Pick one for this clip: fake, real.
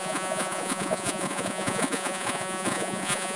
fake